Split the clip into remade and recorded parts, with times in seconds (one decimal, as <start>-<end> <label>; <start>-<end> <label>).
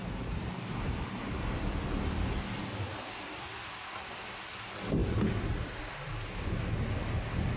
0.0-3.3 remade; 3.3-7.6 recorded